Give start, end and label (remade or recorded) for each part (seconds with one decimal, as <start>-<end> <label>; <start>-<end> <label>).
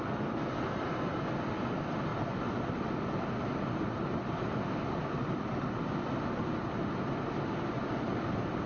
0.0-8.7 recorded